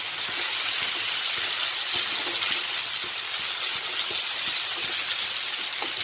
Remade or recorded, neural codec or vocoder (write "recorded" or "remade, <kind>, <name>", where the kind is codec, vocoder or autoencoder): recorded